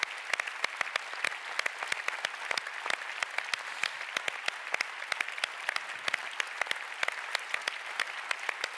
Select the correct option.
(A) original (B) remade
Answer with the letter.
A